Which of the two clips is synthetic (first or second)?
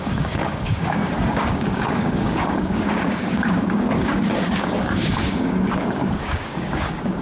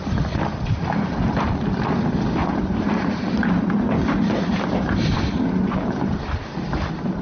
first